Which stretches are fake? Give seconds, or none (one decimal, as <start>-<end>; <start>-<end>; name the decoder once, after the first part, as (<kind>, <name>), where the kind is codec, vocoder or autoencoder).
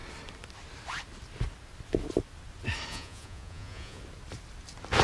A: 2.9-4.0 (vocoder, Vocos)